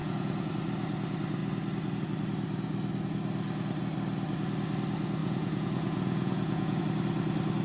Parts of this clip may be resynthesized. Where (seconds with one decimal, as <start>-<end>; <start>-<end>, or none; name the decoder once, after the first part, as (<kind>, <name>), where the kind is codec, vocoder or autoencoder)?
0.0-0.5 (vocoder, Vocos); 5.2-6.8